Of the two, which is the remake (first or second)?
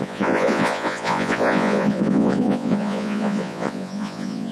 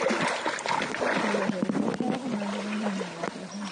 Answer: first